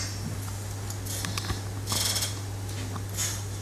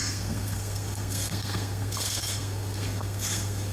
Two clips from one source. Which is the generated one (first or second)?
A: second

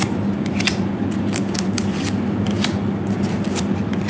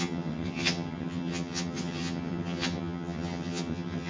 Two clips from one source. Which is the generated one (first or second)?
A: second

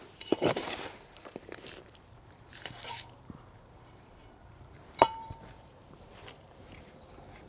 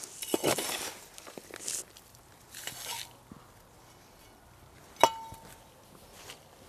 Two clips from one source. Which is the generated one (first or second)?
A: first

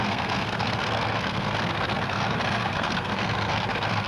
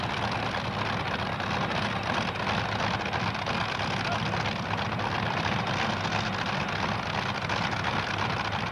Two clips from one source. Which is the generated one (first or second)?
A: first